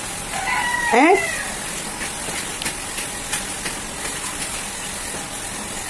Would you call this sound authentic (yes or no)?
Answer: yes